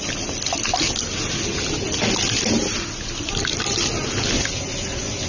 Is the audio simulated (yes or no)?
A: no